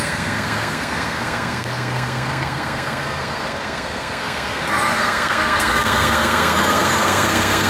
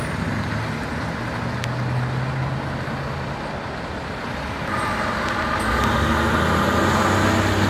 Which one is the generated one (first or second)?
first